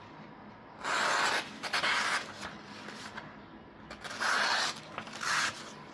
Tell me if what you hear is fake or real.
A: real